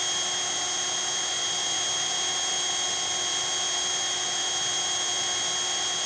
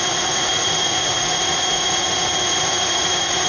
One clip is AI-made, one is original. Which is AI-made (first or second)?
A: second